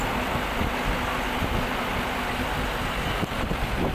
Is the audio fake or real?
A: real